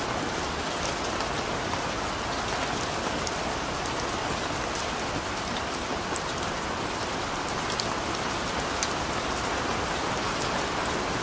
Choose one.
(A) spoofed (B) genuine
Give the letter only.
B